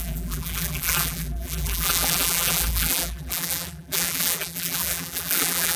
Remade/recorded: remade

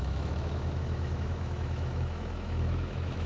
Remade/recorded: remade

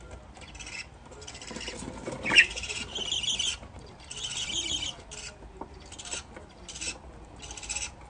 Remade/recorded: recorded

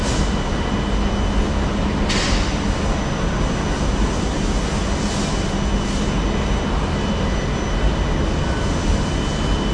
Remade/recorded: recorded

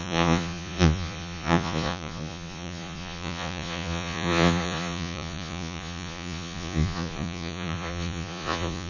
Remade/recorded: remade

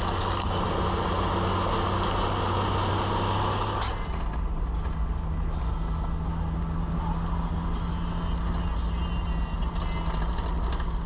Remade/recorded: recorded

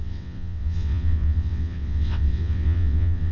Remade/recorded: remade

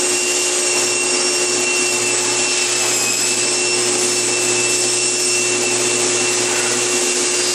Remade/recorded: recorded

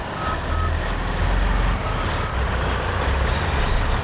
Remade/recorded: recorded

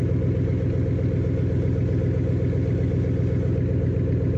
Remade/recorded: recorded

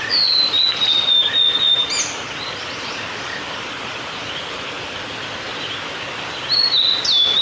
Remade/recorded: recorded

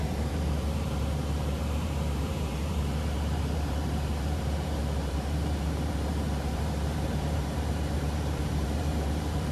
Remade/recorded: remade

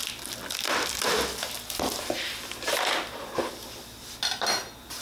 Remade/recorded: recorded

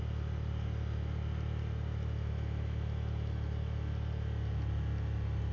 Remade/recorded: recorded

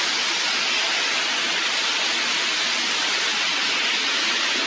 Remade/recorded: recorded